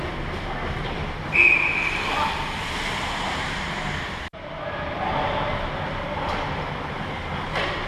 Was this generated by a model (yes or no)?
no